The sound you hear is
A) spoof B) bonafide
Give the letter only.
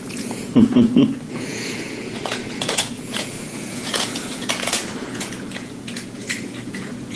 A